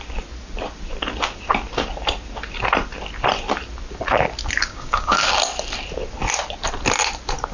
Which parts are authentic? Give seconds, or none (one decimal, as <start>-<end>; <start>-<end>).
0.0-4.7; 5.3-7.5

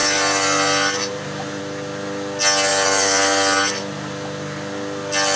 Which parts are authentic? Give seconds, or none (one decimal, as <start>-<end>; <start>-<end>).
1.6-2.7; 3.8-5.4

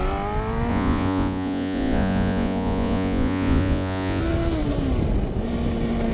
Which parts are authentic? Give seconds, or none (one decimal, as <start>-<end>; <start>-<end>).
0.0-0.7; 4.2-6.1